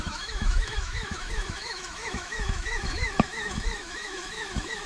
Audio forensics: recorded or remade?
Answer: remade